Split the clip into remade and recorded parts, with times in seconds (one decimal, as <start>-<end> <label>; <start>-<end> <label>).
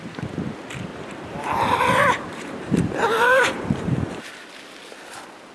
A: 0.0-0.9 recorded; 0.9-4.2 remade; 4.2-5.5 recorded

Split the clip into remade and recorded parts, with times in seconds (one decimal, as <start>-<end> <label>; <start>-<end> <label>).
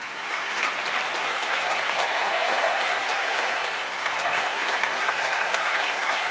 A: 0.0-0.7 remade; 0.7-1.2 recorded; 1.2-6.3 remade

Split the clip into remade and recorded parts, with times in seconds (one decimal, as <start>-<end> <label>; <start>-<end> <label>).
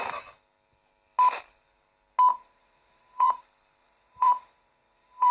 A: 0.0-2.3 recorded; 2.3-3.4 remade; 3.4-3.8 recorded; 3.8-5.3 remade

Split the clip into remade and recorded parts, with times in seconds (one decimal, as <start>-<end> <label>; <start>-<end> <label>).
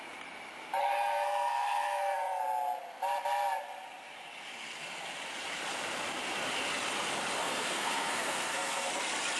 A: 0.0-0.8 recorded; 0.8-2.4 remade; 2.4-7.4 recorded; 7.4-8.9 remade; 8.9-9.4 recorded